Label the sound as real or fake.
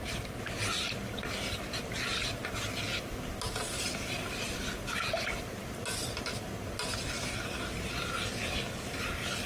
real